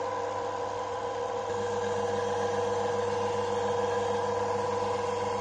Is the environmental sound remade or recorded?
recorded